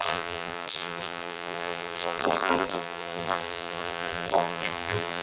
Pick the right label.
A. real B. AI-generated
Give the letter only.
B